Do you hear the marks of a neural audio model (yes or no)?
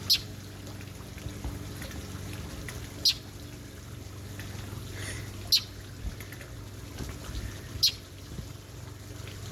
no